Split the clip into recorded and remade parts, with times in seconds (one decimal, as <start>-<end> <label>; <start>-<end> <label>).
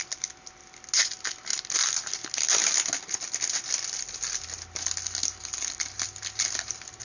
0.0-7.0 recorded